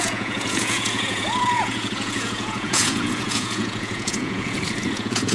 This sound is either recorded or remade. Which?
remade